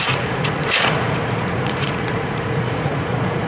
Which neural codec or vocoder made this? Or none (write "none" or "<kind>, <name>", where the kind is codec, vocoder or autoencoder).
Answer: vocoder, Vocos